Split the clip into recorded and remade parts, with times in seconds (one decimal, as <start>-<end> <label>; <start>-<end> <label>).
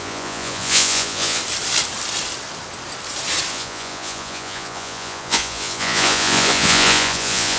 0.0-1.4 remade; 1.4-3.5 recorded; 3.5-7.6 remade